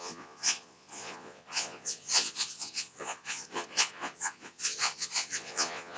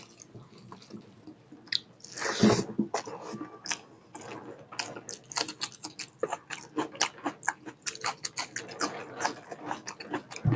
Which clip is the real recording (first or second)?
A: second